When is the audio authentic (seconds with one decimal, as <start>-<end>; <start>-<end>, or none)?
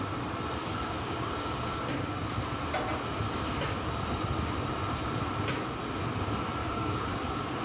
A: 0.0-0.6; 2.2-6.6